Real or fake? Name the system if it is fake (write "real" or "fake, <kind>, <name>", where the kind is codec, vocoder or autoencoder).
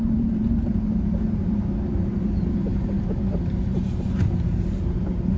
fake, vocoder, BigVGAN v2